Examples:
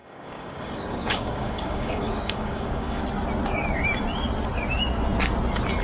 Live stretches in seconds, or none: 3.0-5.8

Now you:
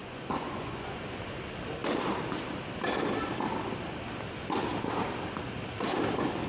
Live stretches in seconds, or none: 1.0-6.5

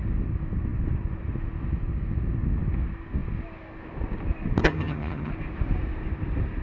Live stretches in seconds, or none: 0.0-4.6; 5.3-6.6

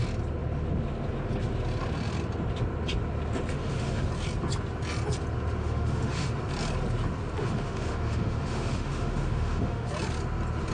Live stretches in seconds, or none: 0.0-3.5; 4.1-5.6; 6.3-7.4; 9.9-10.7

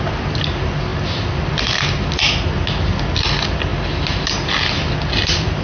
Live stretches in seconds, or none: 0.0-5.6

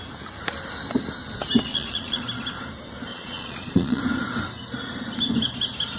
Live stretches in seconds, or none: 0.0-1.7; 2.2-3.1; 4.0-6.0